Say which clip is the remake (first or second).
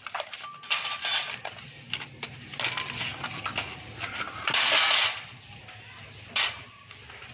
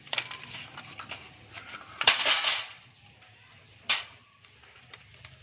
second